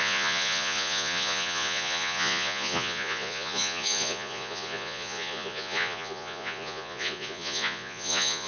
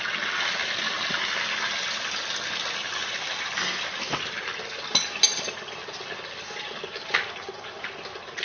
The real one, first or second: second